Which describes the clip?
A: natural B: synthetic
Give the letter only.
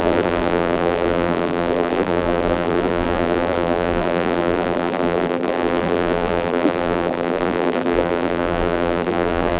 B